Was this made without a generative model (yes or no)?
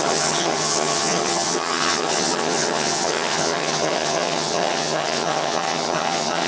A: no